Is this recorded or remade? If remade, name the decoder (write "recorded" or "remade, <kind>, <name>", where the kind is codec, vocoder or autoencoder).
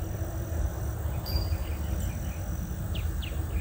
recorded